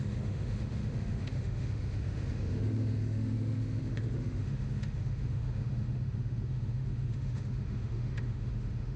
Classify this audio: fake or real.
fake